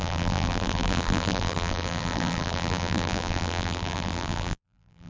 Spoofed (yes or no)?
yes